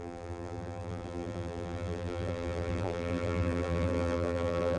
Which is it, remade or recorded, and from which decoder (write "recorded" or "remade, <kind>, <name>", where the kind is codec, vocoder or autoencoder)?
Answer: remade, vocoder, BigVGAN v2